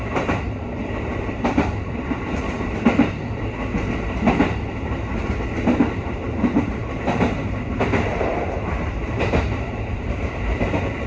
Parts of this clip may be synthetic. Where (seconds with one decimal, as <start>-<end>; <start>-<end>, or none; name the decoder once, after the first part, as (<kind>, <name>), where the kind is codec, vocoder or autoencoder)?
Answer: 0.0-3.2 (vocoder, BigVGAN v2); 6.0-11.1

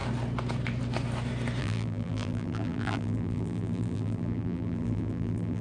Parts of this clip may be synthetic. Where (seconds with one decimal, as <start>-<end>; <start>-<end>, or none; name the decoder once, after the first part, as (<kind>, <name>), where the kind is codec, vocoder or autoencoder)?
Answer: 1.6-5.6 (vocoder, BigVGAN v2)

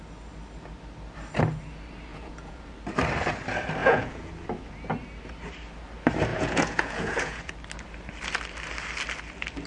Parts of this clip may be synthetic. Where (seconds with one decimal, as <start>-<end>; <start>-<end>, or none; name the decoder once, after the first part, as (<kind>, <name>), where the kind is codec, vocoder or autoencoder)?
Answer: 2.1-2.6 (vocoder, Vocos); 3.8-4.3; 6.3-7.5

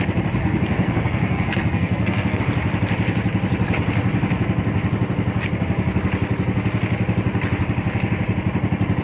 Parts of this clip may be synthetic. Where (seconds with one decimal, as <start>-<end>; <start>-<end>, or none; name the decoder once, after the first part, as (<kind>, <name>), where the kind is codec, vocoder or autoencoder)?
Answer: 0.4-2.4 (codec, SNAC)

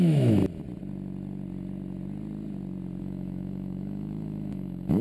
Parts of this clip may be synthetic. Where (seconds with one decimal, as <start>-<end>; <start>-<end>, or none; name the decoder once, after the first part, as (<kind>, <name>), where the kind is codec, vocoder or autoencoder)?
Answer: 0.0-0.4 (autoencoder, DAC-VAE); 3.0-5.0

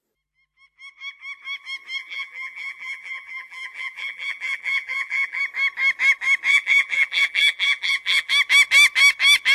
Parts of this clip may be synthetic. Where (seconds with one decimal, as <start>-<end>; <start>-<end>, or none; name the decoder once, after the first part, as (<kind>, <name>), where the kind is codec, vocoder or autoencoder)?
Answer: 2.0-5.4 (vocoder, BigVGAN v2); 6.5-8.3

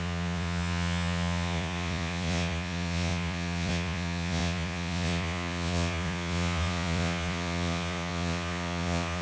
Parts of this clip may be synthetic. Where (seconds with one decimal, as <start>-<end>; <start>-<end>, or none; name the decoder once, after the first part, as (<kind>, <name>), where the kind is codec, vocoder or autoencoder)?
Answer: 0.0-9.2 (vocoder, Vocos)

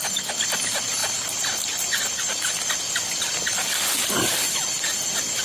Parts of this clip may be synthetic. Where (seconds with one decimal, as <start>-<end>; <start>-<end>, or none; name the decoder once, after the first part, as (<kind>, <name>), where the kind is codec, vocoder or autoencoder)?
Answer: none